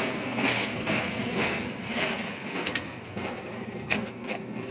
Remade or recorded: remade